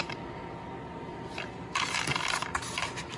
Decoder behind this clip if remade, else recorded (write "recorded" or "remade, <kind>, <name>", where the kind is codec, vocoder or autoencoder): recorded